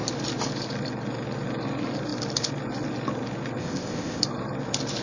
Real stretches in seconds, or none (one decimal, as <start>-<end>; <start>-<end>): 0.0-3.6; 4.2-5.0

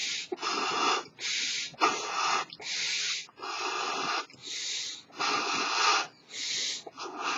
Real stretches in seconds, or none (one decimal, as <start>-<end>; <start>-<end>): 0.0-7.4